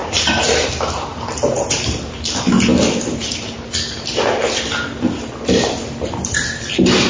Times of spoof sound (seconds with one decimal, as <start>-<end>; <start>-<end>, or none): 0.0-0.7; 1.1-2.0